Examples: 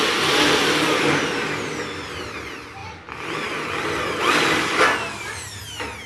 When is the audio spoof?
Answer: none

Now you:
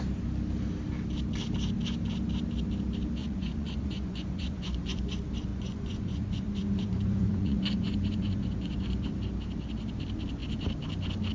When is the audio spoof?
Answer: 3.2-5.0; 5.5-9.1

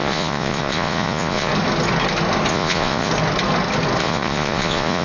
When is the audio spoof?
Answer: 0.0-1.5; 2.5-3.1; 4.0-5.0

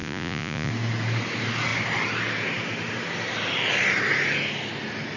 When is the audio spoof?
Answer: 0.0-0.7

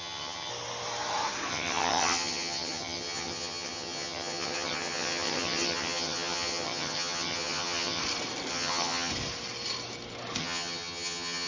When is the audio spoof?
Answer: 0.0-0.5; 1.5-8.0; 8.5-9.1; 10.4-11.5